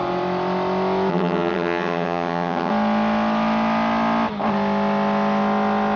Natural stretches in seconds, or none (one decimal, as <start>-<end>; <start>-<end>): 0.0-1.1; 2.7-6.0